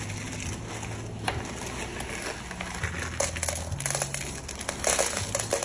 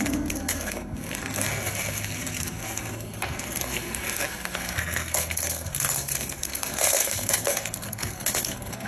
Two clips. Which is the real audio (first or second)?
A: first